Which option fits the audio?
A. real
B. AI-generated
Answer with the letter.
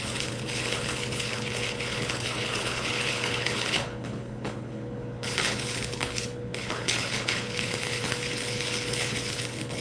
B